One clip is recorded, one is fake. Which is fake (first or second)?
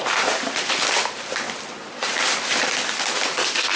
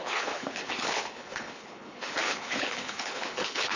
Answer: second